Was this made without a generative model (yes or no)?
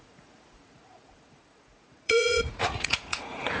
no